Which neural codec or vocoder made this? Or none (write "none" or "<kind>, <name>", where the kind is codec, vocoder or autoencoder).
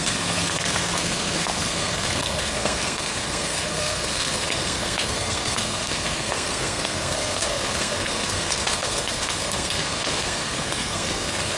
codec, SNAC